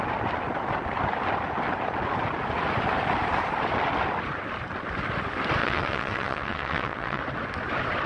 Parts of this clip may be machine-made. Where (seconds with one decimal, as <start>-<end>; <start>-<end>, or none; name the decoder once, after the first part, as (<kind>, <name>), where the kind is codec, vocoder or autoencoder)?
5.6-7.2 (vocoder, WaveNeXt)

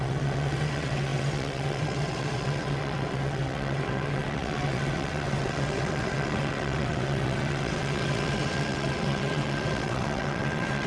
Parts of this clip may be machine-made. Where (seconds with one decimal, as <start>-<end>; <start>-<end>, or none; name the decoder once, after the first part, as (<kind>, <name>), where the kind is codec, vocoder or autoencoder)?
0.0-10.9 (vocoder, WaveNeXt)

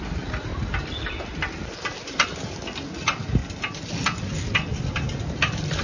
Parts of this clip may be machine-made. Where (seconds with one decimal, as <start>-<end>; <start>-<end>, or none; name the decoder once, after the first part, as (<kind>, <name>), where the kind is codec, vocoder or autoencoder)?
0.0-0.5 (vocoder, BigVGAN v2); 1.4-3.4; 4.2-5.8

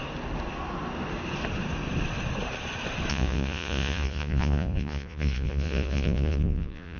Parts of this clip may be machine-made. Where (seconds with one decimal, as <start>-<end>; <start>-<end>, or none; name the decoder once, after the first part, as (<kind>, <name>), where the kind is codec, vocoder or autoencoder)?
3.1-7.0 (vocoder, Vocos)

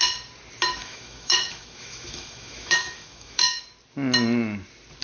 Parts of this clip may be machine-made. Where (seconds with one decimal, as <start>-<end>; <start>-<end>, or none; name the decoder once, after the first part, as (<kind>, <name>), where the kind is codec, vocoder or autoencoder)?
0.8-3.6 (autoencoder, DAC-VAE)

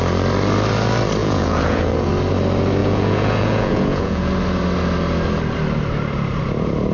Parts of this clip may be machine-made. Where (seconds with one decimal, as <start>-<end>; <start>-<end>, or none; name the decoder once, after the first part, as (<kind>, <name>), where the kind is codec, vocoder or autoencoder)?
1.2-2.1 (vocoder, Vocos); 2.8-4.3